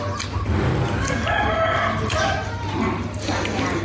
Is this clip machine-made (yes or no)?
no